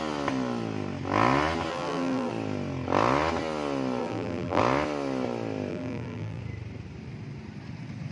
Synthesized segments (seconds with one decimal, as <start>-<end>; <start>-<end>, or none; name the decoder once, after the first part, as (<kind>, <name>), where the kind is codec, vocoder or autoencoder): 1.7-2.3 (vocoder, BigVGAN v2); 4.0-4.6; 5.7-6.4